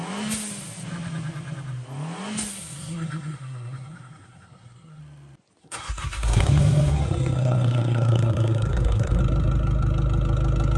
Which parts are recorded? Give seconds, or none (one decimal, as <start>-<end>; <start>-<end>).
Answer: 0.0-2.5; 5.0-5.6; 9.2-10.8